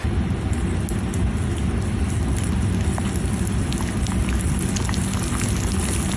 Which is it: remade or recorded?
recorded